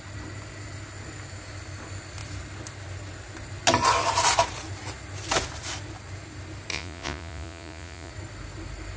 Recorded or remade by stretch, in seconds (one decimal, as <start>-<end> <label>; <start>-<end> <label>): 0.0-6.7 recorded; 6.7-8.1 remade; 8.1-9.0 recorded